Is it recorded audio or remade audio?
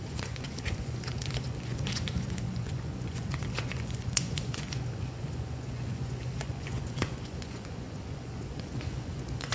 remade